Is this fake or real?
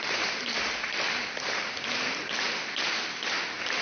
real